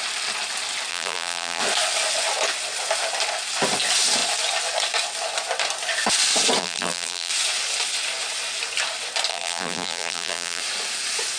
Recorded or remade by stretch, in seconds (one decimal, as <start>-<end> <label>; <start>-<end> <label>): 0.0-0.9 recorded; 0.9-1.6 remade; 1.6-6.6 recorded; 6.6-7.3 remade; 7.3-9.3 recorded; 9.3-10.6 remade; 10.6-11.4 recorded